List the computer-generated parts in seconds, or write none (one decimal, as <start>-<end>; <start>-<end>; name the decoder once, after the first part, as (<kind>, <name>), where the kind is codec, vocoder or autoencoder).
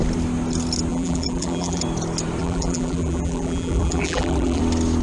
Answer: 0.9-1.8 (vocoder, BigVGAN v2); 2.4-4.6